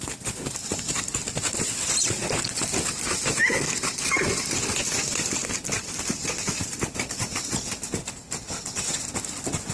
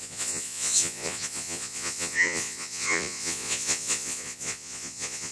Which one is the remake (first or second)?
second